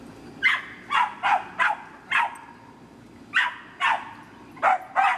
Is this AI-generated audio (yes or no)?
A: no